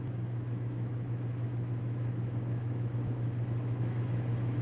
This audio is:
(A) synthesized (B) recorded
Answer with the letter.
A